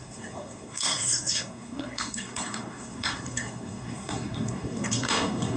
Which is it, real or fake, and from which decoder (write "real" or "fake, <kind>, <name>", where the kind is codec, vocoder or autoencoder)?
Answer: fake, codec, SNAC